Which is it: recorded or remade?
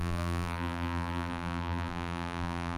remade